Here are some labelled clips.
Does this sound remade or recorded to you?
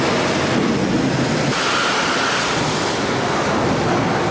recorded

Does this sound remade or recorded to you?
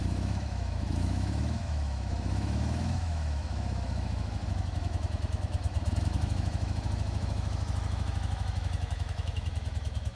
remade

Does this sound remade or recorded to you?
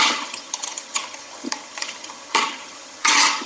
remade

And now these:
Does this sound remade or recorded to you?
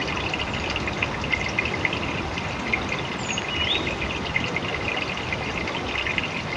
recorded